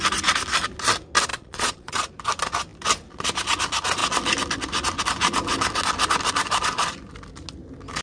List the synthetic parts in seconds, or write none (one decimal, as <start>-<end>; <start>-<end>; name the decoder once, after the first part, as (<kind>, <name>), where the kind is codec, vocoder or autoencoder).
1.3-2.1 (vocoder, Vocos)